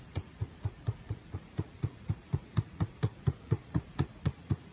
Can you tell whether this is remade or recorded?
remade